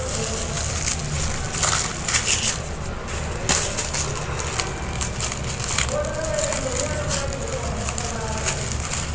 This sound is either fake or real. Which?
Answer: real